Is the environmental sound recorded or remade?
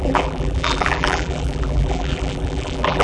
remade